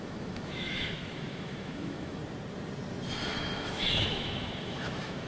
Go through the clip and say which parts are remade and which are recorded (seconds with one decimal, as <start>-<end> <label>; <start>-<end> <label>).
0.0-2.2 remade; 2.2-3.3 recorded; 3.3-5.3 remade